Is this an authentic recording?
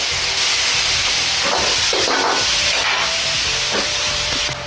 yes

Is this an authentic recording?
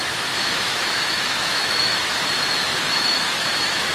no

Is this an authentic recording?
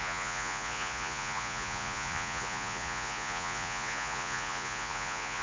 no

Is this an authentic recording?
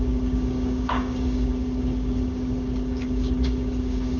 no